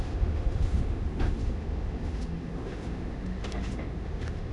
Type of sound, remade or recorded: remade